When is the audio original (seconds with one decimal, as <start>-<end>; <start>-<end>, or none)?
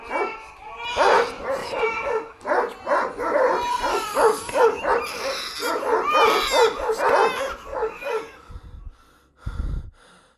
0.0-1.6; 2.4-3.9; 4.8-7.7; 8.5-10.4